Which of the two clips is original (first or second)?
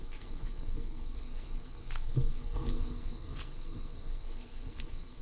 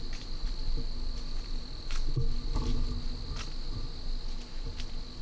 second